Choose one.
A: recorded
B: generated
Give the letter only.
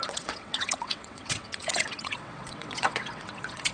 B